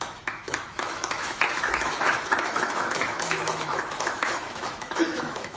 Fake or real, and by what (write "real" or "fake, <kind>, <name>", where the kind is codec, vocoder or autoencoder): fake, autoencoder, DAC-VAE